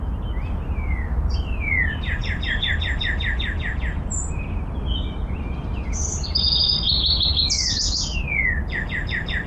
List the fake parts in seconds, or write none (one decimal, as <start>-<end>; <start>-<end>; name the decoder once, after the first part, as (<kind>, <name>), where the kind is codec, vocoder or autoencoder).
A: 6.0-7.3 (vocoder, BigVGAN v2)